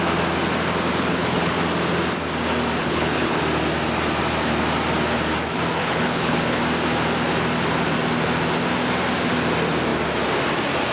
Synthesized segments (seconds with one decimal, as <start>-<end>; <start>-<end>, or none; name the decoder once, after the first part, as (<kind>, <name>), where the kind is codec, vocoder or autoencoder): 0.9-1.6 (codec, HILCodec); 2.8-3.4; 5.8-6.6